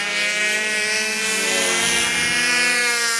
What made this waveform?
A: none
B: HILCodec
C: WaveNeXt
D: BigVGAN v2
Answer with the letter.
D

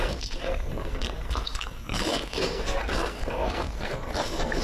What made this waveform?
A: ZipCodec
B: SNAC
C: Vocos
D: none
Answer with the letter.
B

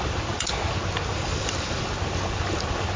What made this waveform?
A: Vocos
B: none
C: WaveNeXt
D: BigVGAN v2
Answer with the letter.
B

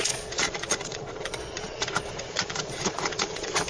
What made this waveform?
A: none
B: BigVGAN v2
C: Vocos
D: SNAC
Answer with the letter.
C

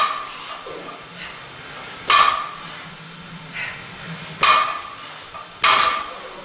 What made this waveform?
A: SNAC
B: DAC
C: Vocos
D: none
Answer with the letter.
D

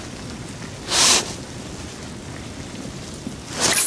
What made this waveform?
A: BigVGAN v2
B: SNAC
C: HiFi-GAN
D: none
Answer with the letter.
D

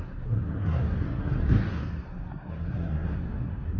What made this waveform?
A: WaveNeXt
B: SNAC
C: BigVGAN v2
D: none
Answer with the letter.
B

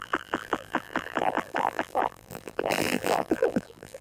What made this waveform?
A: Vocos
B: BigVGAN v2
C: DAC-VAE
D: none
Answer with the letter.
B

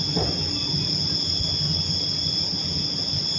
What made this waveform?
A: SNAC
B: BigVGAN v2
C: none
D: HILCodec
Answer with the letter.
C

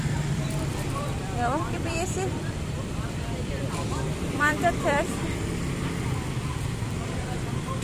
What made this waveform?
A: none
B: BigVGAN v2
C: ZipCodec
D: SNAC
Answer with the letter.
B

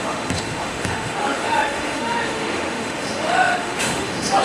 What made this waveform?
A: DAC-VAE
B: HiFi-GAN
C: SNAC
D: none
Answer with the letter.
A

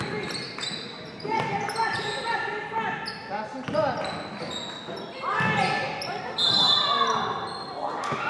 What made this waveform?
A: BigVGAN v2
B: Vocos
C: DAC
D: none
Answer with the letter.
D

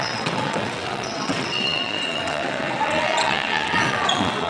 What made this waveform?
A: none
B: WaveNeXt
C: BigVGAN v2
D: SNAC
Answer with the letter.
B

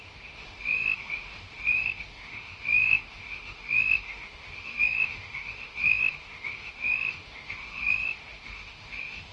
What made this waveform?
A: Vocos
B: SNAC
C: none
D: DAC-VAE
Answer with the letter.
D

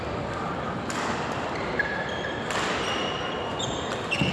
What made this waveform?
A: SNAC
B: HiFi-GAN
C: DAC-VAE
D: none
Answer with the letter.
D